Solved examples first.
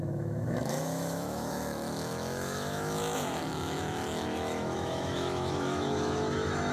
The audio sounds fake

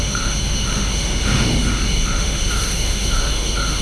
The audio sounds fake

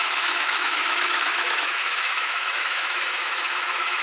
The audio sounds fake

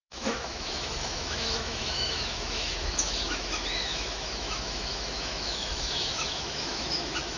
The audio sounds fake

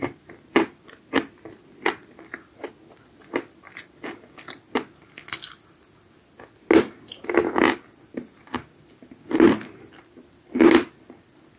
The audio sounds real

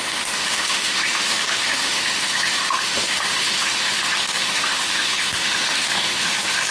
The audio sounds fake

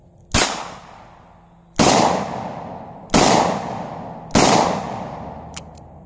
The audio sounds real